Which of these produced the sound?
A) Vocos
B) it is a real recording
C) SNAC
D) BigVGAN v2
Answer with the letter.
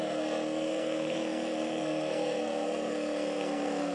C